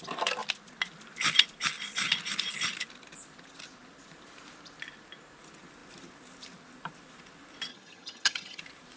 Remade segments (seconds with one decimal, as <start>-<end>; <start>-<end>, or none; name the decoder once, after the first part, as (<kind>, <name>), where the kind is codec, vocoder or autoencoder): 7.7-8.6 (vocoder, HiFi-GAN)